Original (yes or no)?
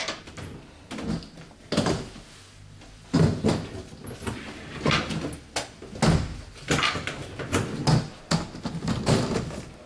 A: yes